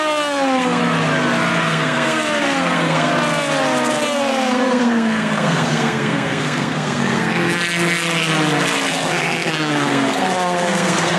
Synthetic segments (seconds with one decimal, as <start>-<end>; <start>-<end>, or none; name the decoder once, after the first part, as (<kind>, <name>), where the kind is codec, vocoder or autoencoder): 0.0-0.8 (codec, SNAC); 1.6-3.1; 3.9-7.6; 8.9-11.2